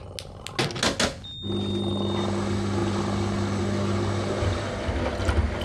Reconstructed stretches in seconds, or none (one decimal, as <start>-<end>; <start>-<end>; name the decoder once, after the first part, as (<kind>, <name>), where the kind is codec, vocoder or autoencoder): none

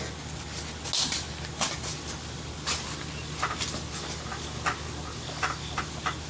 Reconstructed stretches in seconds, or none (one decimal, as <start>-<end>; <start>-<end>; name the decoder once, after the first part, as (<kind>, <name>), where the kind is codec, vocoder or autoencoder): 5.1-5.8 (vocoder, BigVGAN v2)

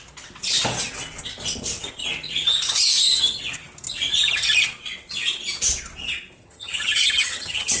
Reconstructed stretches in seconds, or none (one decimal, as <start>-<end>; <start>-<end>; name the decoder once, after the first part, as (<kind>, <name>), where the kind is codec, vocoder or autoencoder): 6.4-7.8 (vocoder, HiFi-GAN)

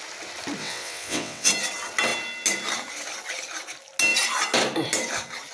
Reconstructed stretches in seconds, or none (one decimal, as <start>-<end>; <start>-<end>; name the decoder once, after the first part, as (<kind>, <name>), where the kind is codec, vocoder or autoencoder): 0.6-1.5 (vocoder, WaveNeXt)

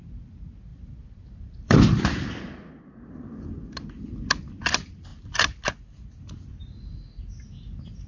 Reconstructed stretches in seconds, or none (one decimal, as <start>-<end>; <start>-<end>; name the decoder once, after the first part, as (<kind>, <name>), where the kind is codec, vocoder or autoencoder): 0.7-1.8 (vocoder, BigVGAN v2); 5.1-6.5

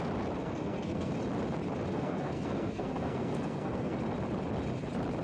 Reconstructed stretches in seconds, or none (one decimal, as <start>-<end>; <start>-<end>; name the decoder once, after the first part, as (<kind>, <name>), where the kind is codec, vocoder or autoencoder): 0.4-1.1 (codec, SNAC); 1.9-4.0

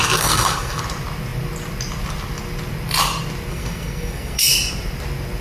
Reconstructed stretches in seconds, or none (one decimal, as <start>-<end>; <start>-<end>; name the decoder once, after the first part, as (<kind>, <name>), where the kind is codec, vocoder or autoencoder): 0.0-0.8 (codec, SNAC); 3.5-4.5